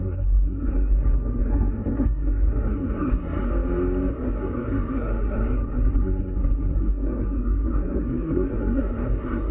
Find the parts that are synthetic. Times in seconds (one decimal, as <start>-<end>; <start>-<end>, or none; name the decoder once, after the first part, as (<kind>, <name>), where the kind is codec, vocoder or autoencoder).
0.0-3.5 (codec, SNAC); 4.1-9.5